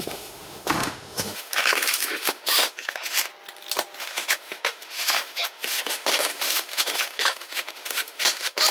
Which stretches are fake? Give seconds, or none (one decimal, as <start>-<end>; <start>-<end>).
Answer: 0.0-3.3; 4.0-8.7